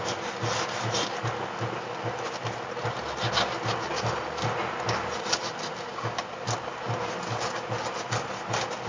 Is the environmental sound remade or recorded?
recorded